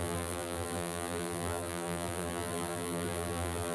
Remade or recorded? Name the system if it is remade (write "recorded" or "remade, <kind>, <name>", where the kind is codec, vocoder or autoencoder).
remade, vocoder, BigVGAN v2